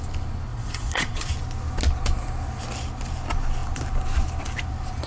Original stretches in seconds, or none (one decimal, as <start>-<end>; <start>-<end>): 0.0-0.5; 1.3-5.1